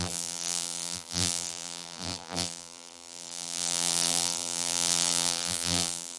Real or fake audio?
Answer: fake